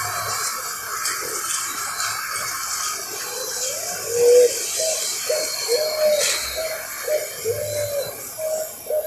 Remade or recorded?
recorded